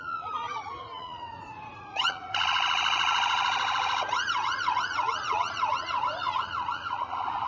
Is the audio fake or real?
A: fake